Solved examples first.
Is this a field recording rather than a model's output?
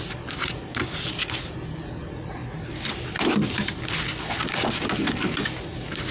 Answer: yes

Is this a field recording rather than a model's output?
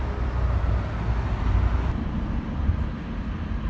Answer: yes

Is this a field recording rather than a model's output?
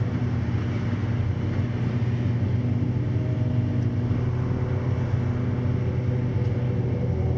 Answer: yes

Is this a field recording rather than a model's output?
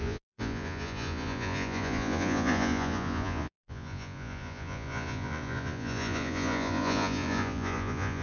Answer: no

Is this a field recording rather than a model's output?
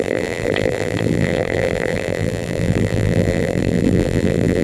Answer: no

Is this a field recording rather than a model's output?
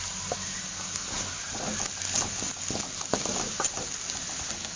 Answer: yes